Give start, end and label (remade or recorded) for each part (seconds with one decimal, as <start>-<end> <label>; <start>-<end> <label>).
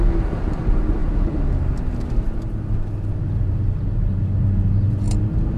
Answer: 0.0-5.6 recorded